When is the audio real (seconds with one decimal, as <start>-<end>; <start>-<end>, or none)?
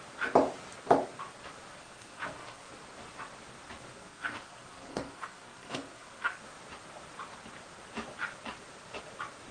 0.0-1.7; 2.7-4.0; 6.4-9.5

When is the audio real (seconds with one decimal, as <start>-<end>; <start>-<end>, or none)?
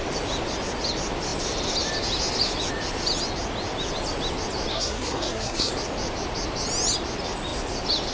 0.0-4.7; 5.7-8.1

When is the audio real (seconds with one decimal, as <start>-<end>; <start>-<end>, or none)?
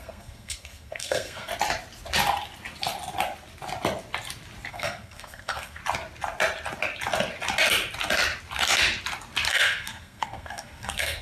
1.5-4.7; 5.8-9.5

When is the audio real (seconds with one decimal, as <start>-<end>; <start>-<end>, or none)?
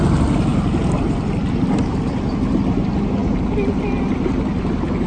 0.0-5.1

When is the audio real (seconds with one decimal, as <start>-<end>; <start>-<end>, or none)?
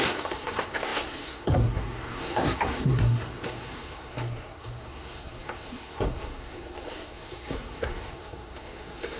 none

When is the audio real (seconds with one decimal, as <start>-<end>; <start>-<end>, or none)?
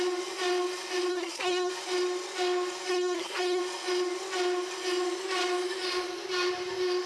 0.0-1.1; 1.7-2.9; 3.6-7.1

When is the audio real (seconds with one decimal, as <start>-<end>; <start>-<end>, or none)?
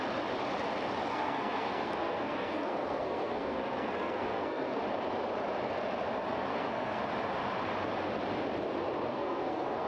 0.0-1.1; 4.8-6.5; 7.0-9.1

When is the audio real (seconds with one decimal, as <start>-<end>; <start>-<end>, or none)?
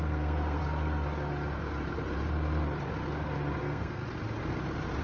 0.6-3.6; 4.0-5.0